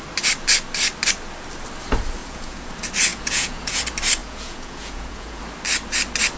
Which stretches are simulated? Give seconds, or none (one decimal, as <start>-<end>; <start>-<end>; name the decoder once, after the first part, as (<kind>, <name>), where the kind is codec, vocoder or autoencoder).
2.2-2.7 (vocoder, Vocos); 3.1-3.8; 4.2-5.4